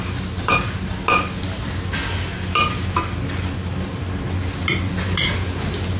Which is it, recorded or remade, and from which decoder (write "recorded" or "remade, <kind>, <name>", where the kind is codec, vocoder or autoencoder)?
recorded